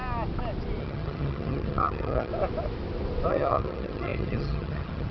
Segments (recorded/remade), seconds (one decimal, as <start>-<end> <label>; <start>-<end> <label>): 0.0-0.8 recorded; 0.8-2.3 remade; 2.3-3.3 recorded; 3.3-5.1 remade